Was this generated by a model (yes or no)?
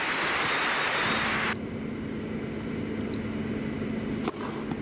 no